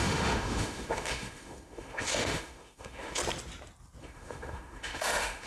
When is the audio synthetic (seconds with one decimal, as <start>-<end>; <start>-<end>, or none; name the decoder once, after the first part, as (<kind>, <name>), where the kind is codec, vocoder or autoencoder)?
0.0-3.2 (autoencoder, DAC-VAE); 4.0-5.5